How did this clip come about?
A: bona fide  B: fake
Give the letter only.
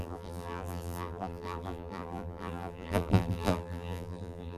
B